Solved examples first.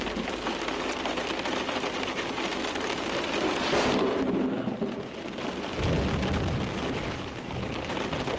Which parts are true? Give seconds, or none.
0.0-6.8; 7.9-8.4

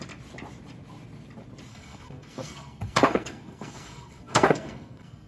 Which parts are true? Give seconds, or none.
0.0-1.7

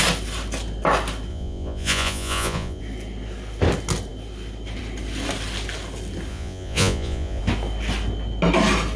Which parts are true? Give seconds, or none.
0.0-1.3; 2.8-6.3; 7.4-9.0

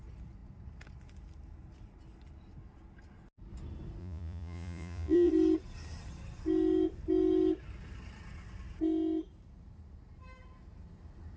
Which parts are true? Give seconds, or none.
0.0-4.0; 5.3-11.4

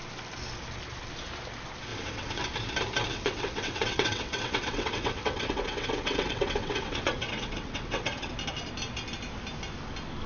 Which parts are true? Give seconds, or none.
0.0-1.9; 2.4-3.1; 8.3-10.3